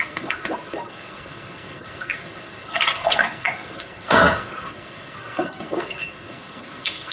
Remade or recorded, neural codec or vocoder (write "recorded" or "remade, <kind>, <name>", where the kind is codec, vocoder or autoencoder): remade, codec, SNAC